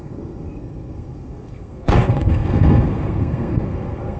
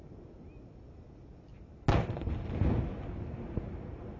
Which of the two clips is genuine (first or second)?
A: second